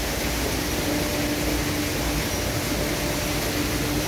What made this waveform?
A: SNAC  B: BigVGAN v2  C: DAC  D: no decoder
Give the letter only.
D